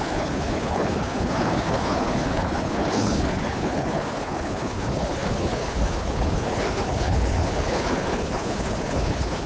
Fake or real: fake